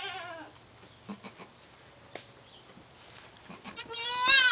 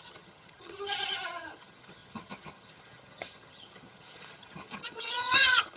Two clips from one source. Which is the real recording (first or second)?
first